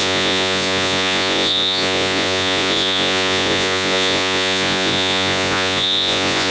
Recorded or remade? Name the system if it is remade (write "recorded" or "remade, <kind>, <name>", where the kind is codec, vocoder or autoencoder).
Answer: remade, vocoder, Vocos